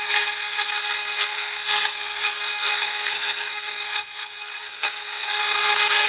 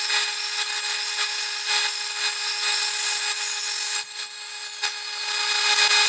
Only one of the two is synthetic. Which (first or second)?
first